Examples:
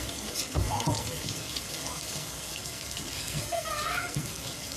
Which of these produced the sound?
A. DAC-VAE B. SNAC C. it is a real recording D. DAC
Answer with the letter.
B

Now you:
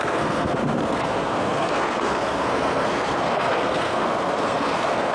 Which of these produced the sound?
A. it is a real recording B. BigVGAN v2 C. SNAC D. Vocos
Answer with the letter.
C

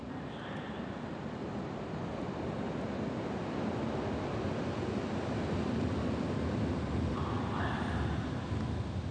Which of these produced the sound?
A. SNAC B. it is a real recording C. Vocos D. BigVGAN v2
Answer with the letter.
B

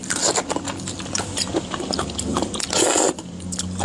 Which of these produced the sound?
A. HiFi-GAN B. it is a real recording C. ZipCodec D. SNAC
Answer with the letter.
B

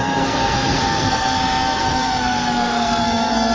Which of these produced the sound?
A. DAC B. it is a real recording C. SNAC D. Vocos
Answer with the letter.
C